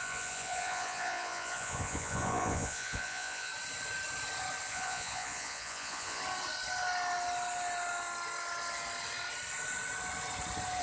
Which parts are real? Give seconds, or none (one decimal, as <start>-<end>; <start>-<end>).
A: 3.5-4.7; 6.2-10.8